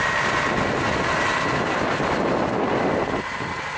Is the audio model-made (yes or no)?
no